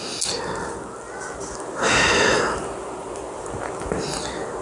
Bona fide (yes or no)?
yes